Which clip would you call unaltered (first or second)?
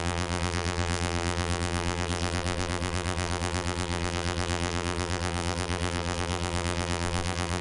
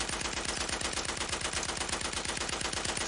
second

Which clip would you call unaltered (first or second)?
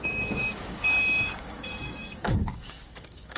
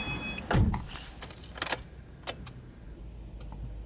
second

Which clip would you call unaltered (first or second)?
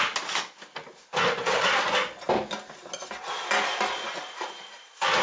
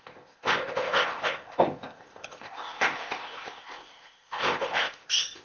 first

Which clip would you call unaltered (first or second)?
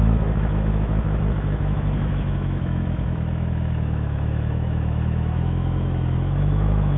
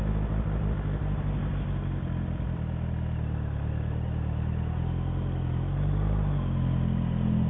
second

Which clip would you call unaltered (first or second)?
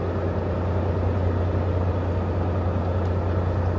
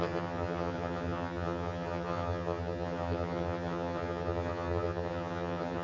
first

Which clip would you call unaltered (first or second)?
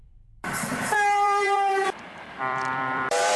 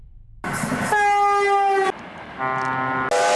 second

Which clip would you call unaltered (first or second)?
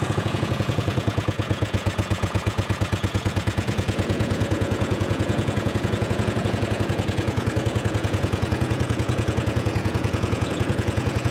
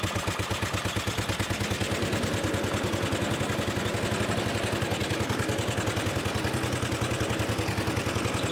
second